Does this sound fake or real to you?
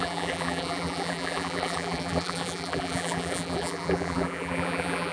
fake